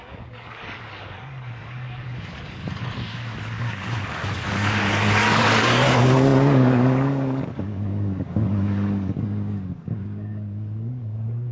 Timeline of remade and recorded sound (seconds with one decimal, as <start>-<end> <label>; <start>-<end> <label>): 0.0-11.5 remade